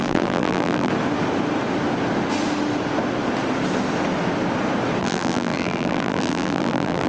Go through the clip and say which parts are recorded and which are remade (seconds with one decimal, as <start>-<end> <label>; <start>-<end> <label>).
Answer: 0.0-0.9 remade; 0.9-5.0 recorded; 5.0-7.1 remade